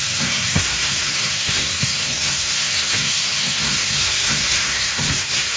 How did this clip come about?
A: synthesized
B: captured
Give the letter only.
A